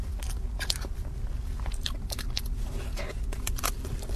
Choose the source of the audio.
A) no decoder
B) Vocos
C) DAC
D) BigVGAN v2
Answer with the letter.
A